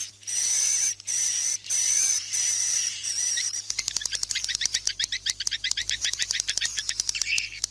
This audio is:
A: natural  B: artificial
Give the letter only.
B